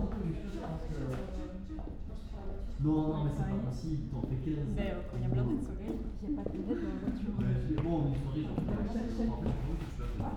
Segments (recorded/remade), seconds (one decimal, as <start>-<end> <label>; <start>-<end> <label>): 0.0-1.5 remade; 1.5-8.8 recorded; 8.8-9.9 remade; 9.9-10.4 recorded